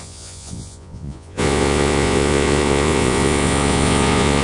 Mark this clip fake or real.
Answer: fake